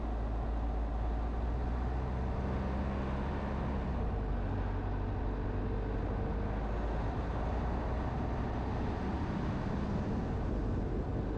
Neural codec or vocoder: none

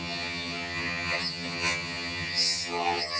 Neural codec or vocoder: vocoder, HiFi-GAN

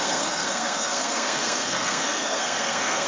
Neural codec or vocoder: codec, SNAC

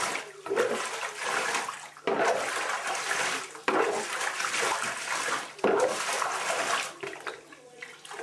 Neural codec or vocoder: none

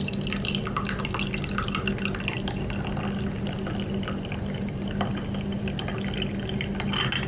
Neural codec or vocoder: none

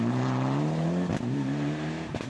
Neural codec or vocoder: none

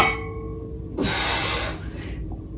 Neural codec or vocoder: none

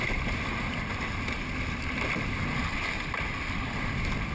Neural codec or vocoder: none